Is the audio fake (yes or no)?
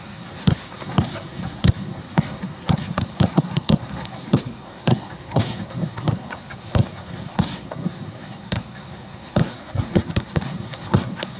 yes